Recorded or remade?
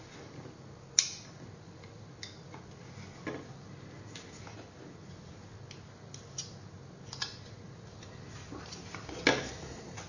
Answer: recorded